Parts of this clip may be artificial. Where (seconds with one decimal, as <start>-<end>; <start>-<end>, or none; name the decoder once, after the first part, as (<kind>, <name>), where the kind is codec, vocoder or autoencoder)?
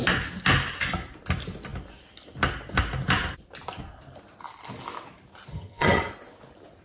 5.5-6.1 (vocoder, HiFi-GAN)